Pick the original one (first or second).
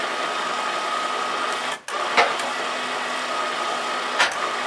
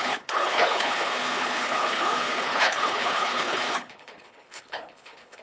first